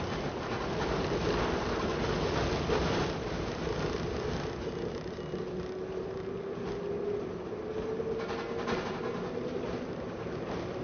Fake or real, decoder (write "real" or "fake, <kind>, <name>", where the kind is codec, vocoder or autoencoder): real